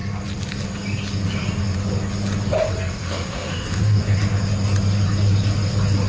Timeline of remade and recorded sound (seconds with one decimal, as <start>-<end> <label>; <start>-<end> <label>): 0.0-3.0 recorded; 3.0-4.0 remade; 4.0-6.1 recorded